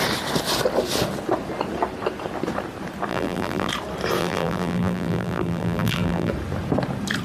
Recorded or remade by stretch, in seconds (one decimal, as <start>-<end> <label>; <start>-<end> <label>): 0.0-3.1 recorded; 3.1-3.7 remade; 3.7-4.2 recorded; 4.2-6.3 remade; 6.3-7.2 recorded